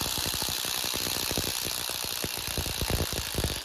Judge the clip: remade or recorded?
recorded